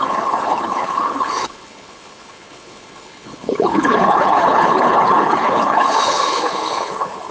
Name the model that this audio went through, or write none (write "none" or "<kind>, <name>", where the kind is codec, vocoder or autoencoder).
codec, HILCodec